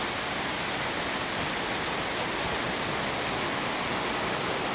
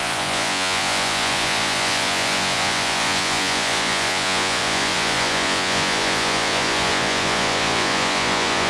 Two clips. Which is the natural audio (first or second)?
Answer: first